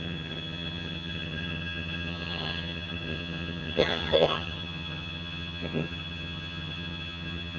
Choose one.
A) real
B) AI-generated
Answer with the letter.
B